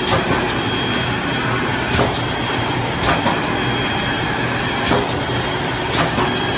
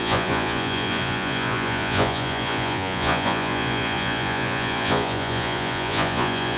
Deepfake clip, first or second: second